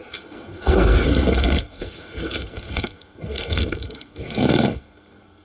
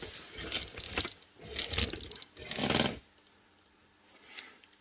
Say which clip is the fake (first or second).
first